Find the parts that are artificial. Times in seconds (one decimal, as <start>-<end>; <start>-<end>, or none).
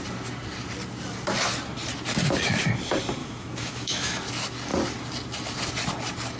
3.2-4.2